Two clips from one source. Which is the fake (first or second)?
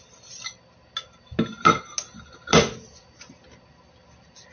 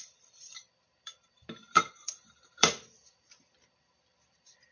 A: second